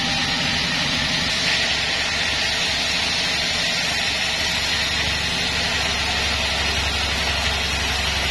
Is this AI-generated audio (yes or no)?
no